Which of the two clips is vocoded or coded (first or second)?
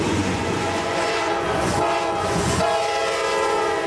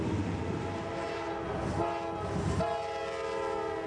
first